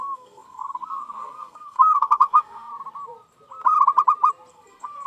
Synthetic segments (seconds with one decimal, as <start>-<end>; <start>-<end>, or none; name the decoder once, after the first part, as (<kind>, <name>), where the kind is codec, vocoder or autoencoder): 0.0-2.7 (codec, SNAC); 4.5-5.1